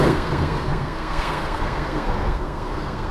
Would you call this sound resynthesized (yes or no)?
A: yes